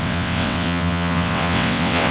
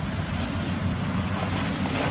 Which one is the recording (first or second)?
second